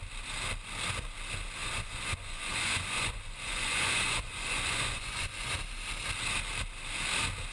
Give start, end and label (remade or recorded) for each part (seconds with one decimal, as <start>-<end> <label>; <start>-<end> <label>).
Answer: 0.0-1.6 recorded; 1.6-5.5 remade; 5.5-7.5 recorded